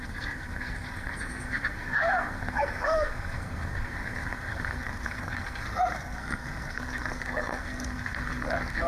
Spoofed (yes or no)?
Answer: yes